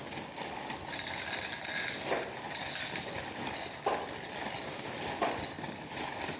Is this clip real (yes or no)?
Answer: yes